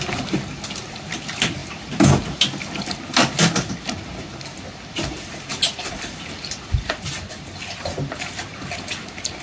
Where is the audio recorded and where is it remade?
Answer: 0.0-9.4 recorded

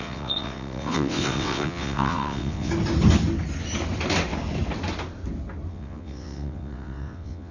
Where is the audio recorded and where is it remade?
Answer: 0.0-2.7 remade; 2.7-5.7 recorded; 5.7-7.5 remade

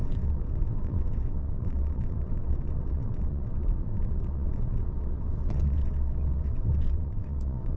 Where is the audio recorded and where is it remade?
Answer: 0.0-7.8 remade

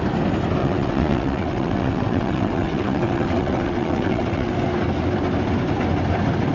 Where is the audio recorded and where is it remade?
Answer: 0.0-0.6 recorded; 0.6-4.5 remade; 4.5-6.5 recorded

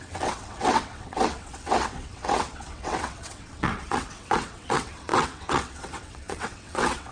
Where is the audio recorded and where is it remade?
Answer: 0.0-7.1 remade